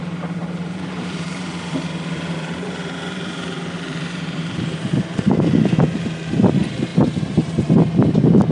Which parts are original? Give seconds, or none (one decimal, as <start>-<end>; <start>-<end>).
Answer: none